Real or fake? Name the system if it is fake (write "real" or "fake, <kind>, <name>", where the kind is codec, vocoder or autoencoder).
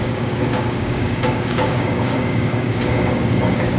fake, codec, DAC